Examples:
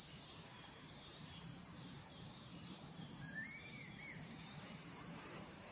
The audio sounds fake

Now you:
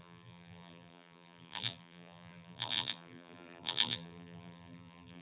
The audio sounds fake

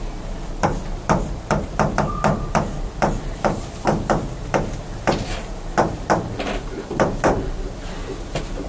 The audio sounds fake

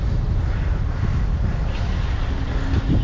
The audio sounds real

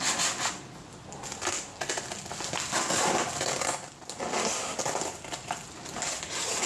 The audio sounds real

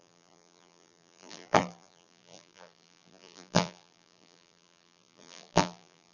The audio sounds fake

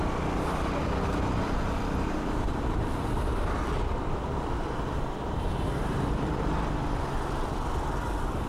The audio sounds fake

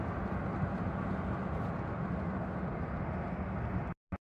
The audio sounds real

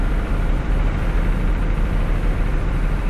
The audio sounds fake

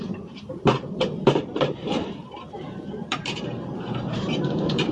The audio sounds fake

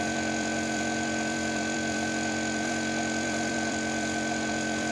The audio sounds fake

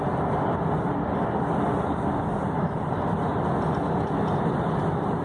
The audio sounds real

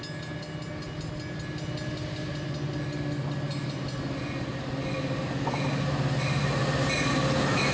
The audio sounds real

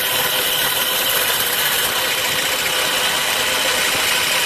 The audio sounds fake